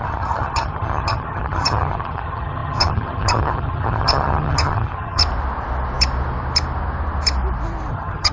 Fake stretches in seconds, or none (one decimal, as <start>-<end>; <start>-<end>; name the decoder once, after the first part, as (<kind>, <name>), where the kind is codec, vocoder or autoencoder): 0.0-5.2 (vocoder, HiFi-GAN); 7.9-8.3